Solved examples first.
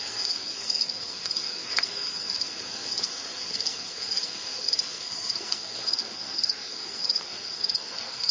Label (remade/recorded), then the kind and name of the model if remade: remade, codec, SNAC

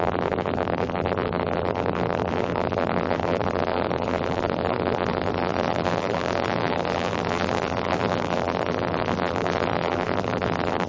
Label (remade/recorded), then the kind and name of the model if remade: remade, vocoder, BigVGAN v2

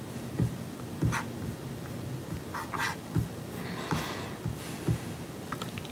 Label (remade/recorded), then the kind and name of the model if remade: recorded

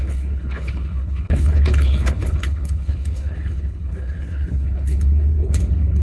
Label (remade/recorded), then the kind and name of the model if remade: remade, codec, HILCodec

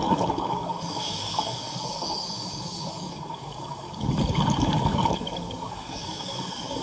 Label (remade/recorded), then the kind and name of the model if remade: remade, codec, DAC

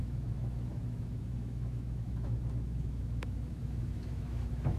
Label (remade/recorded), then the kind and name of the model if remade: remade, autoencoder, DAC-VAE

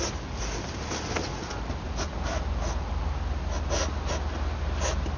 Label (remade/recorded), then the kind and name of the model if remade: recorded